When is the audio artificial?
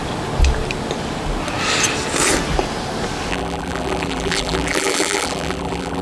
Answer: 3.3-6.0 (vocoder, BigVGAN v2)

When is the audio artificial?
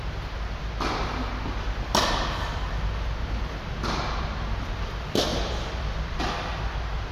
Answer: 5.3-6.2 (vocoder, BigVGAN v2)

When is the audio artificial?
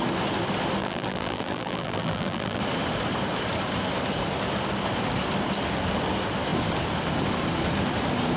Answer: 0.8-2.6 (vocoder, BigVGAN v2)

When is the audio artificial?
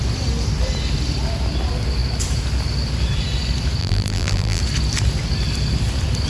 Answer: 3.8-4.6 (vocoder, BigVGAN v2)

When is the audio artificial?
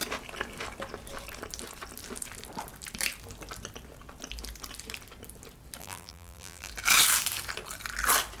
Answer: 5.8-6.7 (vocoder, BigVGAN v2)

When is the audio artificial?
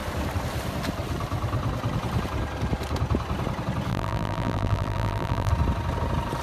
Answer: 3.9-5.5 (vocoder, BigVGAN v2)